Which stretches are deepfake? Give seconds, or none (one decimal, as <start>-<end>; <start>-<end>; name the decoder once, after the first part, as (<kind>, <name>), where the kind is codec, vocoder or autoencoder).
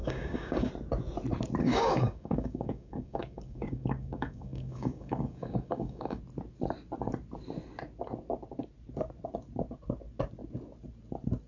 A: 0.0-0.7 (codec, DAC); 1.6-6.2